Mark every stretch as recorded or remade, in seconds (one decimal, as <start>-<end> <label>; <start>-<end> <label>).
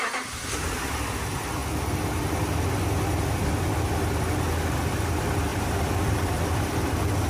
0.0-5.5 recorded; 5.5-6.8 remade; 6.8-7.3 recorded